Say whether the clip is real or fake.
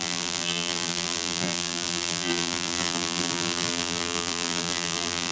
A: fake